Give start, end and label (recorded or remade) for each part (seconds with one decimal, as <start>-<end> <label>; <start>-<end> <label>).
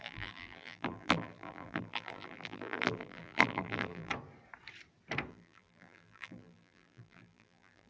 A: 0.0-4.1 remade; 4.1-5.3 recorded; 5.3-7.9 remade